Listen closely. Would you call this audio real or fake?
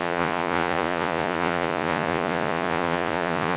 fake